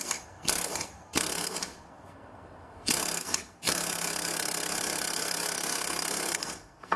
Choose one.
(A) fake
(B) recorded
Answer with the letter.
A